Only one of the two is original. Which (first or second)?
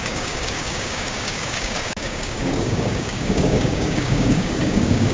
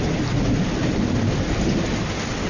second